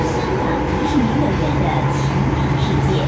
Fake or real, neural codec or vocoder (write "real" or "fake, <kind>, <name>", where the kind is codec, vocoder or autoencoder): real